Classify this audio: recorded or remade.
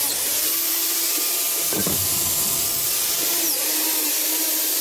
remade